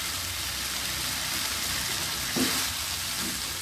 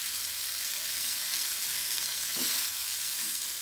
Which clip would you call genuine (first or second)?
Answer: first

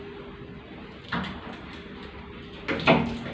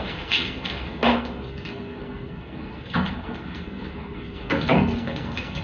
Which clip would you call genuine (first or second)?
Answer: first